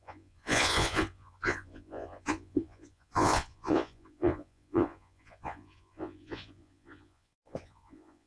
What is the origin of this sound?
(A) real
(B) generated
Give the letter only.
B